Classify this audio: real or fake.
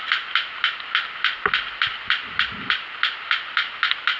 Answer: real